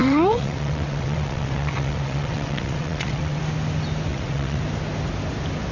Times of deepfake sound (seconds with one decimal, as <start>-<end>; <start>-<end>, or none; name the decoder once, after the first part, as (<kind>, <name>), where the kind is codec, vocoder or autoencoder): 0.0-3.4 (vocoder, WaveNeXt); 4.1-4.6